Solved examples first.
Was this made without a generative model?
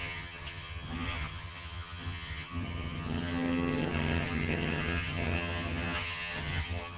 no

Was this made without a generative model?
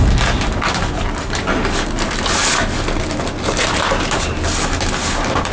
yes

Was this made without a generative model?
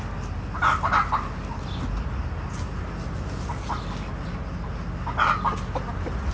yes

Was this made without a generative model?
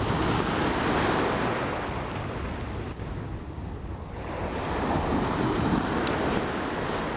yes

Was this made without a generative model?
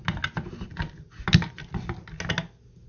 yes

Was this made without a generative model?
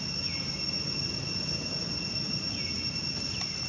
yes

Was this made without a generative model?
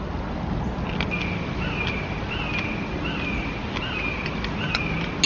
yes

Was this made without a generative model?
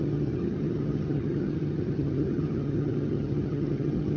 no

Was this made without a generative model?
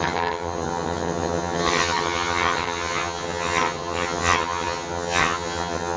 no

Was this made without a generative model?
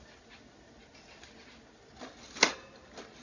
yes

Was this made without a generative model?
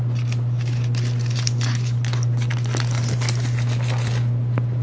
yes